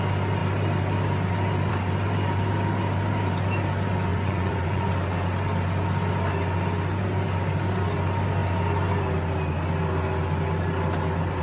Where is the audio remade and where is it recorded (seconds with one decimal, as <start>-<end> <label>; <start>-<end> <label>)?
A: 0.0-4.1 recorded; 4.1-4.9 remade; 4.9-11.4 recorded